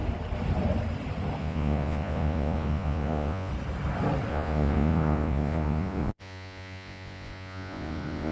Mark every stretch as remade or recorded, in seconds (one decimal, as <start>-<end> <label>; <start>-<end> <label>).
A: 0.0-1.4 recorded; 1.4-3.5 remade; 3.5-4.3 recorded; 4.3-8.3 remade